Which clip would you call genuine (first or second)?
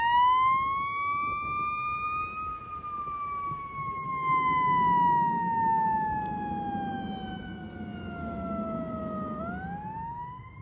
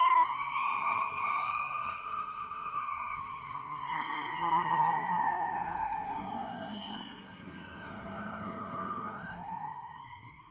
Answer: first